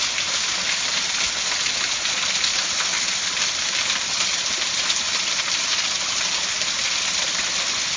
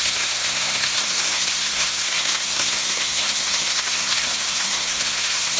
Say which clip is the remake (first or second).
second